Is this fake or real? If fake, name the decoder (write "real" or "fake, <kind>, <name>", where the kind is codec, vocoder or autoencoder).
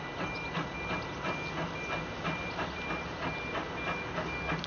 real